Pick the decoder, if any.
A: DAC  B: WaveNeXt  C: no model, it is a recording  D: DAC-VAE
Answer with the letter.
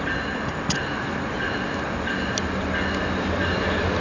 C